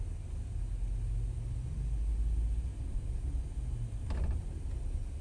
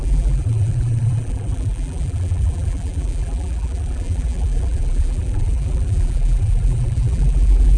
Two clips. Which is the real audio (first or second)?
first